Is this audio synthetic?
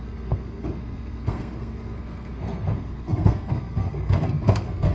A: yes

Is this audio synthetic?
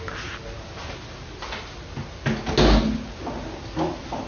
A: no